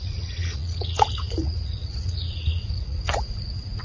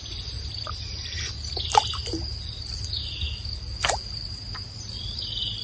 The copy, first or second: first